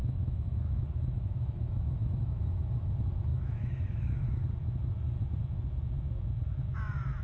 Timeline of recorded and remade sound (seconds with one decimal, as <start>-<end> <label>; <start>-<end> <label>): 0.0-2.9 remade; 2.9-3.3 recorded; 3.3-4.4 remade; 4.4-7.2 recorded